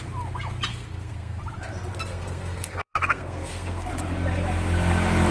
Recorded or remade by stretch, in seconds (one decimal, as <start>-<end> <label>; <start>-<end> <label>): 0.0-0.7 recorded; 0.7-1.4 remade; 1.4-2.1 recorded; 2.1-3.9 remade; 3.9-5.3 recorded